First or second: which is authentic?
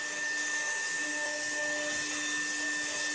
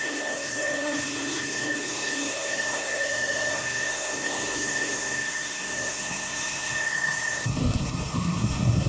first